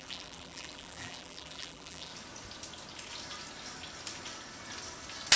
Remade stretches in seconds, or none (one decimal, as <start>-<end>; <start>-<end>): 0.0-2.1